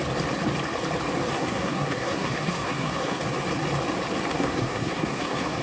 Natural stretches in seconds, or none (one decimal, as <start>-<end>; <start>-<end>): 0.0-1.3; 3.2-4.3